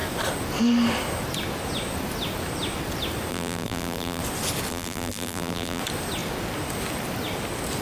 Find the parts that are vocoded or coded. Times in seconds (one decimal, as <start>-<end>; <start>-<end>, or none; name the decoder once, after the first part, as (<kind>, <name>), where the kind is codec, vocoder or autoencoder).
3.3-4.2 (vocoder, BigVGAN v2); 4.7-5.8